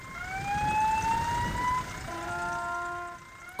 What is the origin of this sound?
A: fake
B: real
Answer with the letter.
B